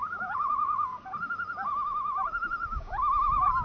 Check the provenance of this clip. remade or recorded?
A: remade